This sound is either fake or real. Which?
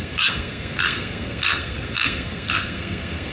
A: fake